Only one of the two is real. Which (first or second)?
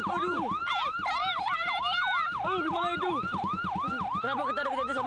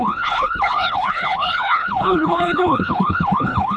first